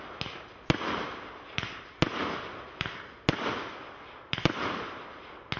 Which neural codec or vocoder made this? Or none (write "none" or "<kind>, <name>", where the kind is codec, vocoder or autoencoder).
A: none